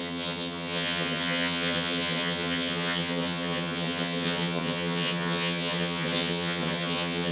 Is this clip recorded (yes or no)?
no